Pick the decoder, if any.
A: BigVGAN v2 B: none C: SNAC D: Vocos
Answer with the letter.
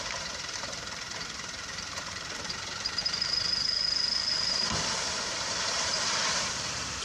A